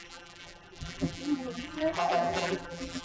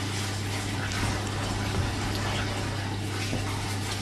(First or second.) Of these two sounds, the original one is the second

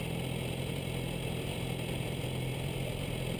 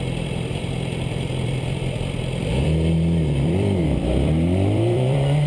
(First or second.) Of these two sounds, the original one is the first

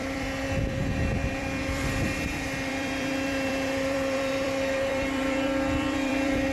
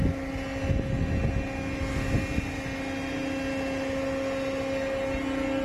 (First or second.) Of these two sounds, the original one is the second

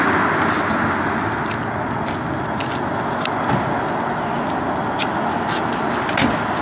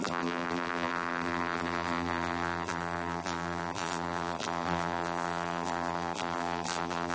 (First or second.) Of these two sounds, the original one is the first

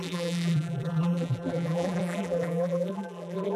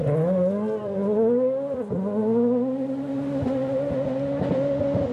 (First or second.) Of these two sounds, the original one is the second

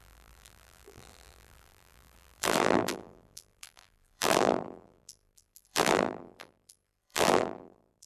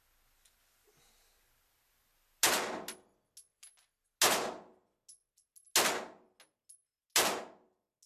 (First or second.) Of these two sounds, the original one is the second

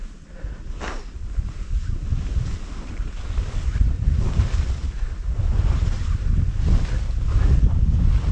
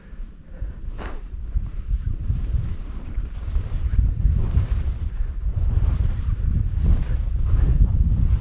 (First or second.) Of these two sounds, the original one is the first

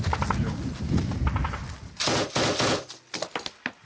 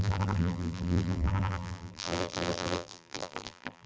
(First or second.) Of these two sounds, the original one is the first